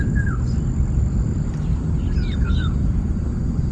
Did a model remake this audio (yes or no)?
no